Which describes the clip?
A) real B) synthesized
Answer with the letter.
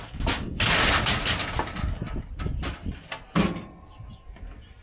A